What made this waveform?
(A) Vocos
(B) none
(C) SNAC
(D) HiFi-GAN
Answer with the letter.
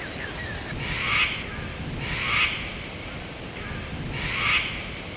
B